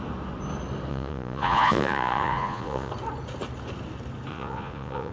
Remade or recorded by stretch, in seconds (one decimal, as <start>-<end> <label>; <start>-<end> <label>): 0.0-0.9 recorded; 0.9-2.9 remade; 2.9-4.3 recorded; 4.3-5.1 remade